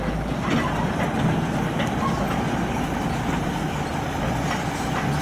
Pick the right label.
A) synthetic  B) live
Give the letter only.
B